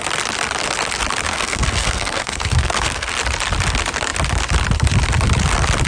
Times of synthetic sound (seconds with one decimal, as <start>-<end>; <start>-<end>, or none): 1.3-3.1